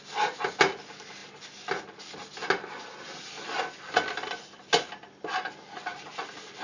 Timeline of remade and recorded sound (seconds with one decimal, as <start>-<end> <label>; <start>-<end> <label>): 0.0-6.6 recorded